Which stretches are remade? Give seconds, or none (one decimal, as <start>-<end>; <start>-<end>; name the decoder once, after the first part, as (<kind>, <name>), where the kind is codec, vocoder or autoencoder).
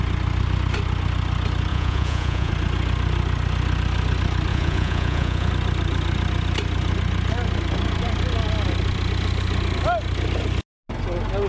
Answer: 1.7-2.5 (vocoder, Vocos); 4.5-5.5